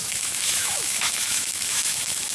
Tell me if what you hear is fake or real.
fake